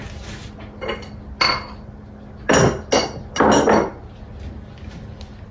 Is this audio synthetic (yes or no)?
no